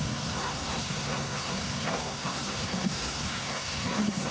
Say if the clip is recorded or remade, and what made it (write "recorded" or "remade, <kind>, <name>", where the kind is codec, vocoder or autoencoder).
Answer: remade, codec, SNAC